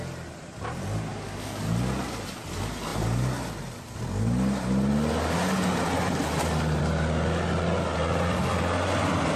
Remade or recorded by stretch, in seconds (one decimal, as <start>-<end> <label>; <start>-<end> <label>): 0.0-1.1 recorded; 1.1-1.6 remade; 1.6-9.4 recorded